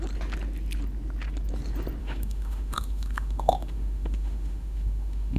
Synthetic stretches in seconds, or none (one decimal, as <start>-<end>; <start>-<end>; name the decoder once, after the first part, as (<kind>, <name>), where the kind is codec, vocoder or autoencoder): 2.0-5.4 (autoencoder, DAC-VAE)